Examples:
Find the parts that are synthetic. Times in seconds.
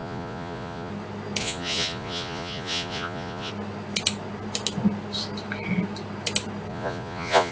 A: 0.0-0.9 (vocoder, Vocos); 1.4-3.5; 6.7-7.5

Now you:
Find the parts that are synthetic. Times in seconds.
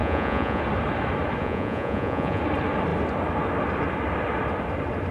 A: 0.0-0.6 (vocoder, Vocos); 1.4-2.4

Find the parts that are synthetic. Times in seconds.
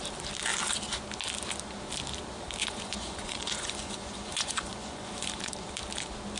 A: 2.6-5.5 (vocoder, Vocos)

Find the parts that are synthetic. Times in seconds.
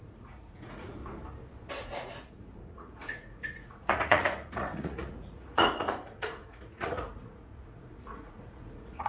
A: 0.0-1.0 (vocoder, Vocos); 1.7-9.1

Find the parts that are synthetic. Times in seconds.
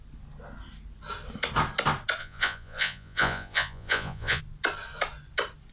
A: 2.2-4.4 (vocoder, Vocos)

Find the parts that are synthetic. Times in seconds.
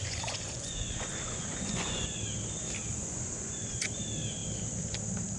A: 0.0-2.2 (vocoder, Vocos); 2.9-4.0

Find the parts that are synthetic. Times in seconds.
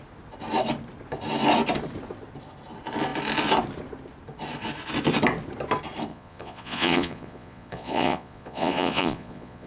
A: 6.1-9.7 (vocoder, Vocos)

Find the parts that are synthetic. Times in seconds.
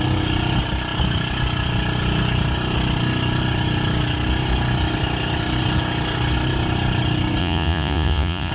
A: 7.4-8.5 (vocoder, Vocos)